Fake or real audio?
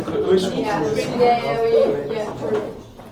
real